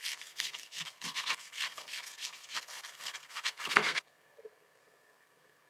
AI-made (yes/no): yes